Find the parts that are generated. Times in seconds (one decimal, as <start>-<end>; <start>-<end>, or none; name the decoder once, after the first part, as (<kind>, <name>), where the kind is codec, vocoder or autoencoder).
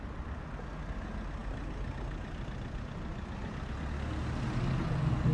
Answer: none